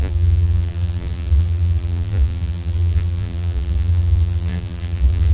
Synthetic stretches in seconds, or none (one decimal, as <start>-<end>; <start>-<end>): 0.0-5.3